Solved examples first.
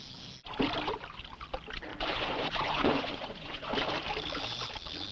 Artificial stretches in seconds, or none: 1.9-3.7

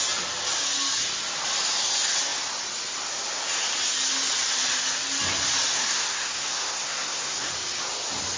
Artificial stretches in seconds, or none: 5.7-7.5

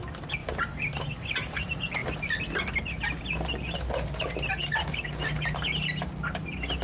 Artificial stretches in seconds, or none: none

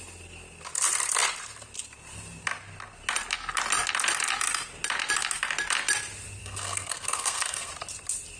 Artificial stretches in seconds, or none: 6.4-7.7

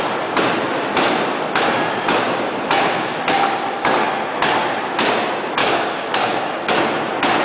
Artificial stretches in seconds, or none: 5.6-6.4

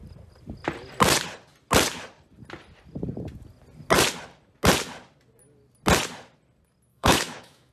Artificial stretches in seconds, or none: 6.9-7.7

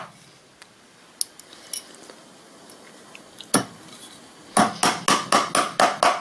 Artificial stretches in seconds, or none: none